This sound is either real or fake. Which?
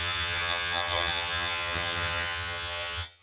fake